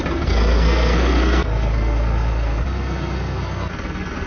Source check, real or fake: fake